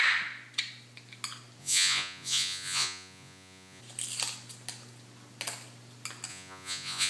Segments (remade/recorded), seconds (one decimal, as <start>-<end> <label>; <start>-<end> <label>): 0.0-1.6 recorded; 1.6-3.8 remade; 3.8-6.3 recorded; 6.3-7.1 remade